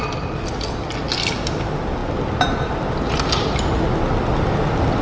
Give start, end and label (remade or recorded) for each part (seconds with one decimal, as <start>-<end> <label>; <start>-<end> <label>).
0.0-5.0 recorded